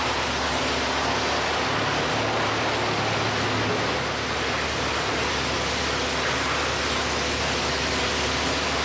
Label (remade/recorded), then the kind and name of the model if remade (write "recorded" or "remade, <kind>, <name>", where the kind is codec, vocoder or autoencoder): recorded